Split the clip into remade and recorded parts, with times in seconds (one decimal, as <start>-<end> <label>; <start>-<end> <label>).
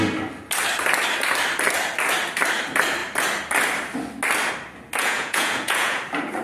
0.0-5.0 recorded; 5.0-6.0 remade; 6.0-6.4 recorded